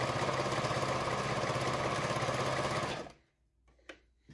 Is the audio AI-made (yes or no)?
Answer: no